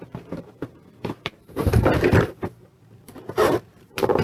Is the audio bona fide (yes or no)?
no